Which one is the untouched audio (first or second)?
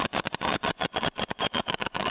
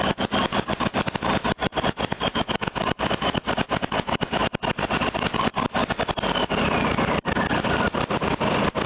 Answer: second